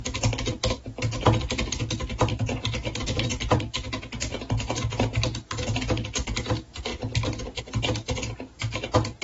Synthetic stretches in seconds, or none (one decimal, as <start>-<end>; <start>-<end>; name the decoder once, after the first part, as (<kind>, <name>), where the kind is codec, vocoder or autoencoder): 2.3-4.0 (vocoder, BigVGAN v2)